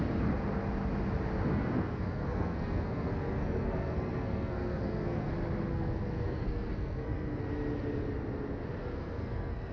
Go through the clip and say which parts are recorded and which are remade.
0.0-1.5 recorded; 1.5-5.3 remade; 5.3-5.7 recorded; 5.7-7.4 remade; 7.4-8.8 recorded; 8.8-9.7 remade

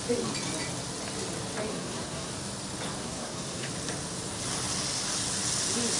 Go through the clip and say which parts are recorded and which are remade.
0.0-1.7 recorded; 1.7-2.3 remade; 2.3-3.0 recorded; 3.0-3.7 remade; 3.7-6.0 recorded

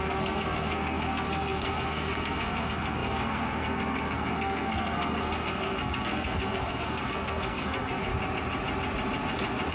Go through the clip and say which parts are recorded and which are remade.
0.0-8.1 remade; 8.1-9.7 recorded

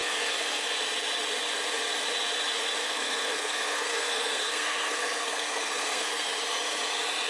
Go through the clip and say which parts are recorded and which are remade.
0.0-0.7 remade; 0.7-2.8 recorded; 2.8-6.3 remade; 6.3-7.3 recorded

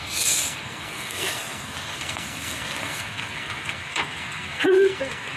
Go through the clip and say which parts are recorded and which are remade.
0.0-5.4 remade